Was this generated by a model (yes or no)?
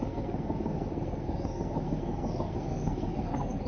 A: yes